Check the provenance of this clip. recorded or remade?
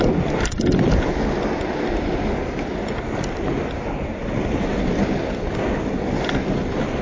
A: recorded